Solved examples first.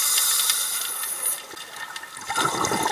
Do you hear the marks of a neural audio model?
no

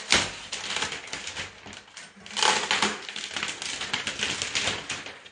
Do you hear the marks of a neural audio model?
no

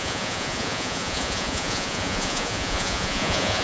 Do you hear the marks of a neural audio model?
yes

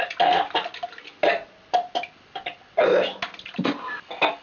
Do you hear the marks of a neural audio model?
no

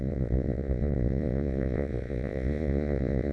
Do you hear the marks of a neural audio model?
yes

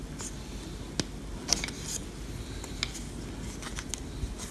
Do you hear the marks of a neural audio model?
no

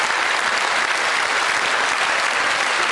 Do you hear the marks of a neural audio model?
no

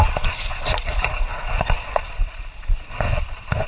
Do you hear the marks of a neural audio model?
yes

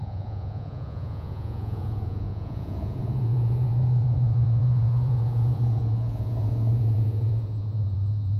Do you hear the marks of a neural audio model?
yes